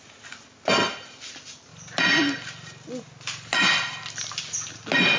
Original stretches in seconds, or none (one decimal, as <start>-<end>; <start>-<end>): 0.0-5.2